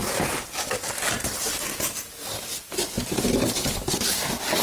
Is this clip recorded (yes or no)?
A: yes